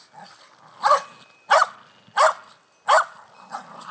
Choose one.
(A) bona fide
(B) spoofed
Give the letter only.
A